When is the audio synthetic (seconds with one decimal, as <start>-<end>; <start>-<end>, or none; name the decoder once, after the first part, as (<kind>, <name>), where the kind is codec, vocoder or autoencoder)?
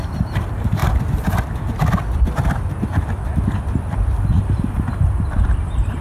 0.0-0.8 (vocoder, BigVGAN v2); 4.4-6.0